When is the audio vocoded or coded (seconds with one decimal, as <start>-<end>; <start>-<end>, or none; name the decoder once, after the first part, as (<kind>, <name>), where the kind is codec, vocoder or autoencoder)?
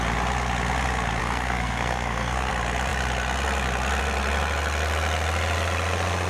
1.2-2.5 (codec, SNAC)